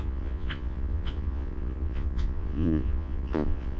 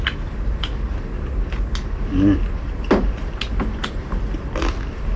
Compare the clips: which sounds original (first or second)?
second